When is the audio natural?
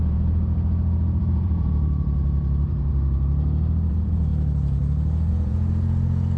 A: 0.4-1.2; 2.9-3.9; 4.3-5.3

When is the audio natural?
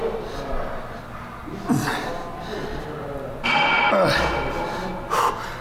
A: 0.0-5.6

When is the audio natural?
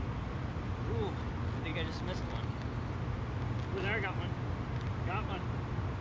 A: 0.0-6.0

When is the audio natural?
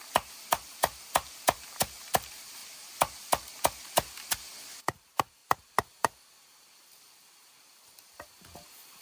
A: 2.6-4.8; 5.4-5.9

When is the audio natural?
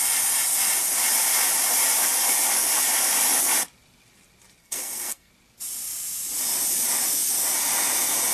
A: 0.0-4.6; 5.3-8.3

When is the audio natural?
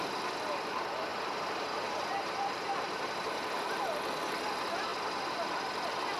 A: 0.0-1.1; 3.8-6.2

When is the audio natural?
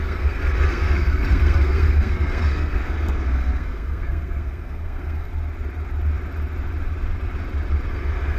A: 5.3-7.9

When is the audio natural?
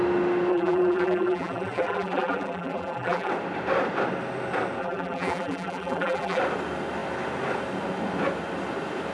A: 0.0-0.5; 3.3-4.8; 6.4-9.1